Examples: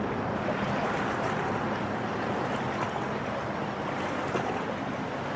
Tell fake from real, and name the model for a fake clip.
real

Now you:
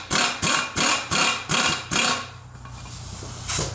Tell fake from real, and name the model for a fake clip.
real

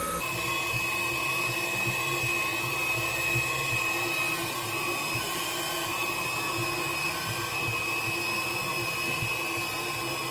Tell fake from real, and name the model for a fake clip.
real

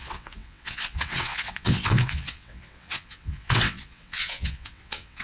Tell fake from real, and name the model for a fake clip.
fake, vocoder, WaveNeXt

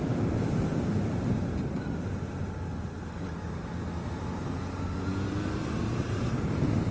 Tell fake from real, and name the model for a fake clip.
real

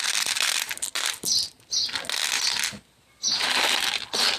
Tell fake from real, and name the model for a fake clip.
real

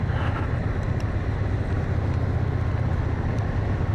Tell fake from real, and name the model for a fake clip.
real